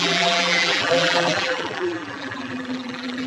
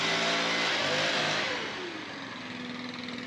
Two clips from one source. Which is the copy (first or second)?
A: first